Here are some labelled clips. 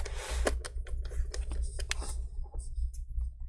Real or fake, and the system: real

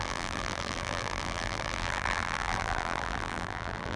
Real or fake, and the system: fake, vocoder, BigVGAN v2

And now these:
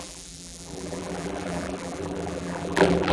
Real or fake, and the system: fake, vocoder, BigVGAN v2